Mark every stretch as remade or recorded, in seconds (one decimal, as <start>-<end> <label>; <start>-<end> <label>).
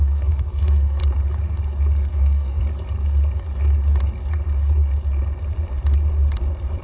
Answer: 0.0-1.0 remade; 1.0-2.1 recorded; 2.1-2.6 remade; 2.6-6.8 recorded